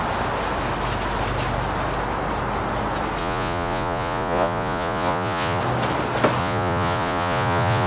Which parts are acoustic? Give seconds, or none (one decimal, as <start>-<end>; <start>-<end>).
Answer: 0.0-3.2; 5.6-6.4